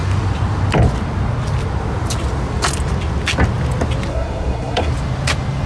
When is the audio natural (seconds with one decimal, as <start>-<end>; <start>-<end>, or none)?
0.0-4.1; 4.9-5.7